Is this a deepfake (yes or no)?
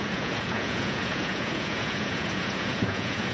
yes